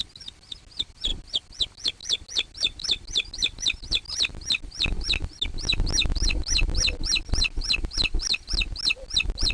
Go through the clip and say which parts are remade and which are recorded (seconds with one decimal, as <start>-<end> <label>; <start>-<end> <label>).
0.0-9.5 recorded